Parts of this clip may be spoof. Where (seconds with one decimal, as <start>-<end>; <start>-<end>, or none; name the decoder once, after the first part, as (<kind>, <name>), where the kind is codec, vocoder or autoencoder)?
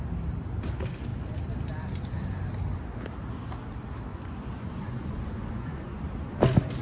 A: 4.1-6.0 (vocoder, Vocos)